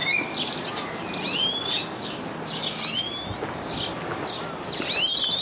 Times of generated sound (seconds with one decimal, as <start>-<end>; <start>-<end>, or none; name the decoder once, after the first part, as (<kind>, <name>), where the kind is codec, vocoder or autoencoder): none